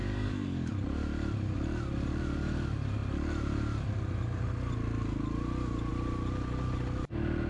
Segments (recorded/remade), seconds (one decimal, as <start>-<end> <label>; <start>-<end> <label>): 0.0-0.7 remade; 0.7-7.5 recorded